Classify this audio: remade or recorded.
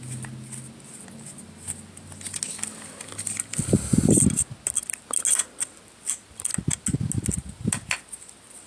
recorded